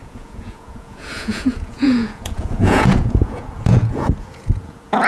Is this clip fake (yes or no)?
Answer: yes